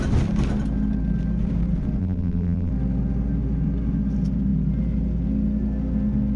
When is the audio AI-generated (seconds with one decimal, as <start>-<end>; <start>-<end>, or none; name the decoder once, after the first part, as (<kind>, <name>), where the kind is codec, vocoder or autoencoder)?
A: 2.0-2.7 (vocoder, BigVGAN v2)